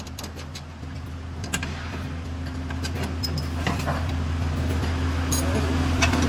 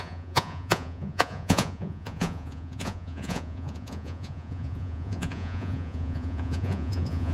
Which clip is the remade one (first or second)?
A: second